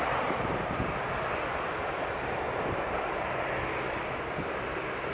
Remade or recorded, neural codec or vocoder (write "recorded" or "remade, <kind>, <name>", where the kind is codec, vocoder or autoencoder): recorded